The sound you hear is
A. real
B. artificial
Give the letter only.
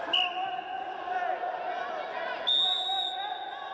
A